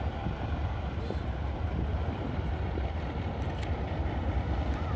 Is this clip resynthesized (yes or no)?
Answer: no